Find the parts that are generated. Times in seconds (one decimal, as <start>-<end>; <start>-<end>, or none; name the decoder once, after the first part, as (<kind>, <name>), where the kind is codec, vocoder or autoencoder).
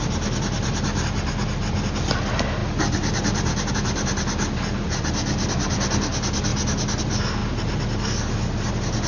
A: none